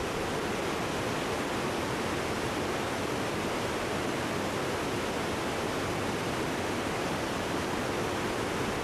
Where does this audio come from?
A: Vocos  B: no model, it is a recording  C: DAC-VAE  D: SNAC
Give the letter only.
B